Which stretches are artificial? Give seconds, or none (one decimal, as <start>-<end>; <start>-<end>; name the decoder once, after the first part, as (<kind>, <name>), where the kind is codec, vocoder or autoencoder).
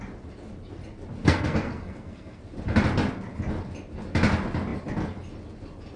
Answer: 1.2-2.4 (codec, SNAC)